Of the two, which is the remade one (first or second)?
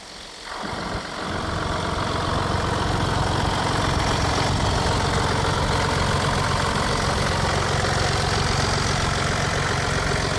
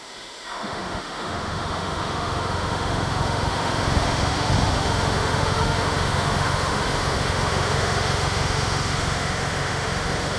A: second